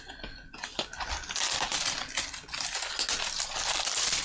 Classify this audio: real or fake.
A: real